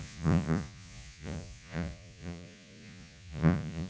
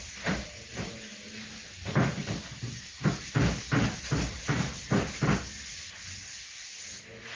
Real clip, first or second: second